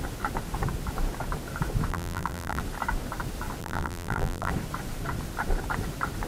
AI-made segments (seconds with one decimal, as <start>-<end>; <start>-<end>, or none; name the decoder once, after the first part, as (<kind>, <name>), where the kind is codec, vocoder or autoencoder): 1.9-2.6 (vocoder, BigVGAN v2); 3.6-4.5

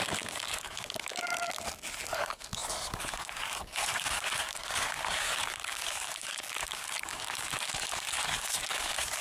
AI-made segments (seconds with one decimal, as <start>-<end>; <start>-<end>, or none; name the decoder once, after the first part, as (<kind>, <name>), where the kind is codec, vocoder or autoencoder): 0.0-9.2 (codec, DAC)

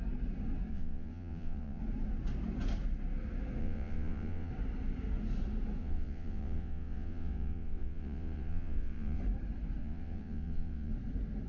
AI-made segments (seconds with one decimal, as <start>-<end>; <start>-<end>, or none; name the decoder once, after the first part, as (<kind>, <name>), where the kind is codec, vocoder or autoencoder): 0.7-1.8 (vocoder, WaveNeXt); 3.6-4.5; 5.8-9.2; 9.8-10.9

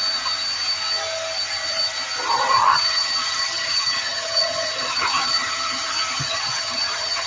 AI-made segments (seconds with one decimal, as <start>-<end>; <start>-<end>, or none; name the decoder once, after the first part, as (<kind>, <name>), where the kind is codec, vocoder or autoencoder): 2.6-7.3 (vocoder, HiFi-GAN)

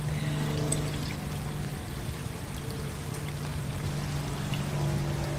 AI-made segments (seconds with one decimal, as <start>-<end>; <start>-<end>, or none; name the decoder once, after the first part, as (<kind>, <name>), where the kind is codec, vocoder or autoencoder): 1.7-3.1 (vocoder, BigVGAN v2); 3.5-4.2